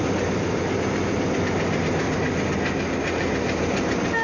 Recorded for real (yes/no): yes